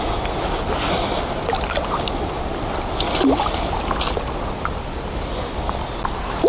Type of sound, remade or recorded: recorded